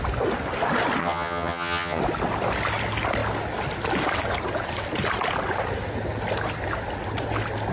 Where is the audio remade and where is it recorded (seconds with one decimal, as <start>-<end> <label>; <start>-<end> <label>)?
0.0-1.0 recorded; 1.0-2.0 remade; 2.0-7.7 recorded